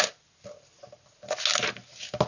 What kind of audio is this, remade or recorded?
recorded